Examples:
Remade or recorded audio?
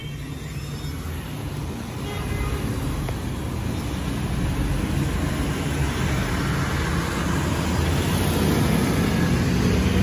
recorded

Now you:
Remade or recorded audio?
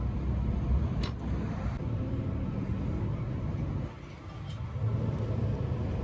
recorded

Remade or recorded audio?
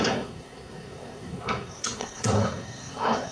remade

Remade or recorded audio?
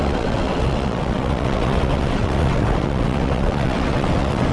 remade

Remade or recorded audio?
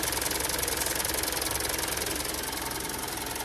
recorded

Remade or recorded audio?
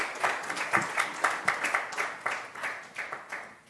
recorded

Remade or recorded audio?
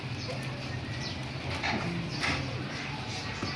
remade